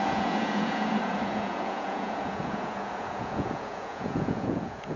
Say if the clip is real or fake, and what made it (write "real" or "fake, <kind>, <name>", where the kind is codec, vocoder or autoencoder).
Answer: fake, vocoder, Vocos